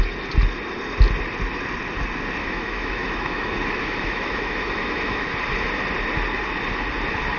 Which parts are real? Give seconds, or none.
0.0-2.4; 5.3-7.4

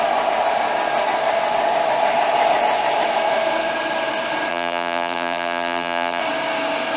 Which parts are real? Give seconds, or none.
0.0-4.5; 6.2-7.0

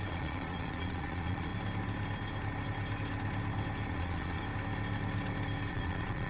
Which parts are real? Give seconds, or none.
1.5-3.9; 4.4-5.7

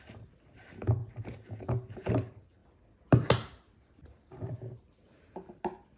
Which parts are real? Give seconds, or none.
0.0-6.0